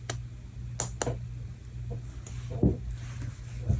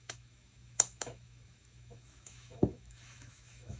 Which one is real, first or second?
first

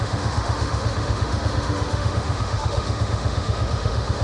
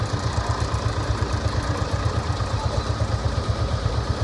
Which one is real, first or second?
second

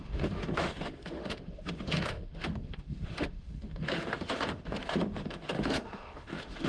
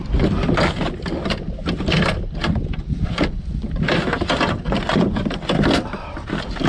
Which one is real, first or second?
second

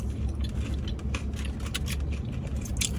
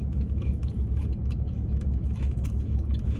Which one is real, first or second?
first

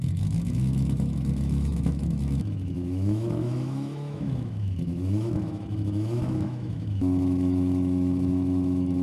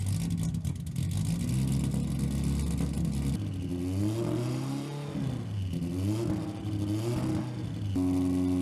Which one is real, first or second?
second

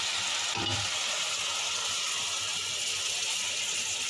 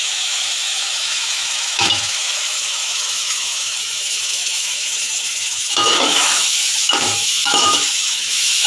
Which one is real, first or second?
first